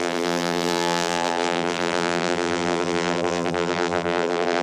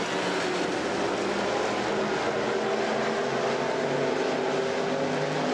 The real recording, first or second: second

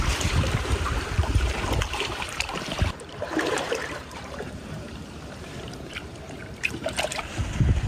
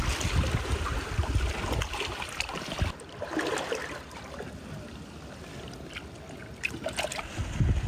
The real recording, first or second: second